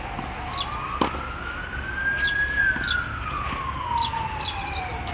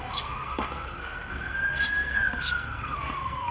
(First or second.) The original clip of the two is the first